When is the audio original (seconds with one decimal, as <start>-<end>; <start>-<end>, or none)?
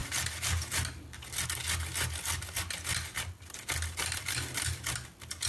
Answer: 0.0-3.3